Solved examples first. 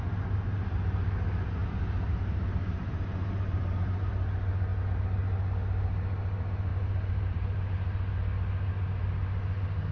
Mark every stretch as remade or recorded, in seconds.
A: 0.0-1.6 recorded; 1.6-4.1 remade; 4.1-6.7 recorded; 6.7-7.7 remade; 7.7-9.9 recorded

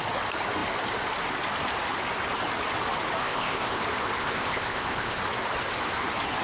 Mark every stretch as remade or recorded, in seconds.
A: 0.0-3.2 recorded; 3.2-3.8 remade; 3.8-4.2 recorded; 4.2-5.2 remade; 5.2-6.4 recorded

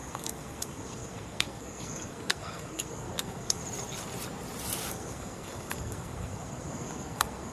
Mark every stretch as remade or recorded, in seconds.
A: 0.0-3.6 remade; 3.6-4.9 recorded; 4.9-7.5 remade

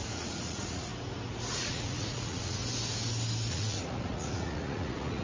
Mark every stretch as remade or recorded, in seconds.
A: 0.0-0.9 remade; 0.9-1.5 recorded; 1.5-2.6 remade; 2.6-3.5 recorded; 3.5-5.2 remade

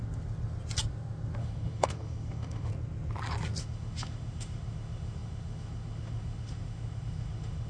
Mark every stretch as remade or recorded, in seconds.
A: 0.0-1.4 recorded; 1.4-2.7 remade; 2.7-3.6 recorded; 3.6-7.7 remade

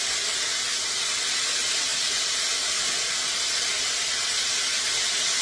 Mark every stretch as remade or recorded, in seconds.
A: 0.0-5.4 recorded

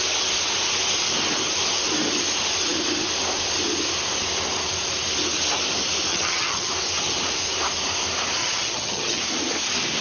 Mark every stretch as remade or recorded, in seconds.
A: 0.0-6.1 recorded; 6.1-6.7 remade; 6.7-8.4 recorded; 8.4-9.2 remade; 9.2-10.0 recorded